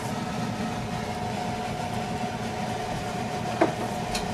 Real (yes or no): yes